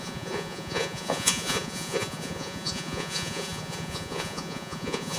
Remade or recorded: remade